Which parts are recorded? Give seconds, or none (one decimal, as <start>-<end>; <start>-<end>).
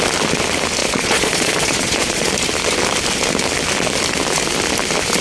0.0-0.8; 2.3-5.2